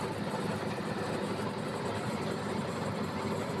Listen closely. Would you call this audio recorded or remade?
recorded